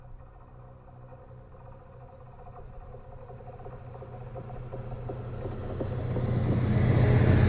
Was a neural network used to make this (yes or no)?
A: no